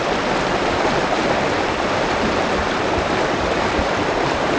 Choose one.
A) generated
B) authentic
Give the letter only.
A